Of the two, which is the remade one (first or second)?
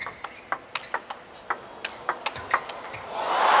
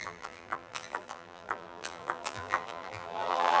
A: second